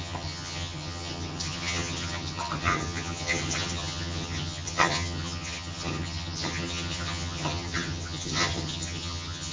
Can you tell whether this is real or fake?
fake